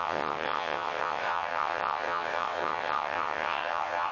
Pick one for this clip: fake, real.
fake